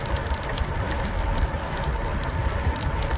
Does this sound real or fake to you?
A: real